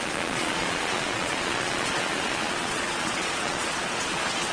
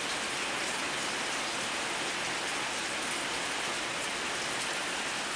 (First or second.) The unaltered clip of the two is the second